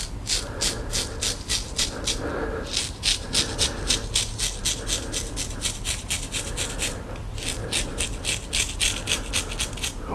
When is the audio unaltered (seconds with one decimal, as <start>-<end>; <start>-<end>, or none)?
0.0-10.1